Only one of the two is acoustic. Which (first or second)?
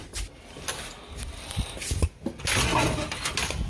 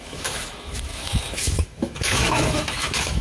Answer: first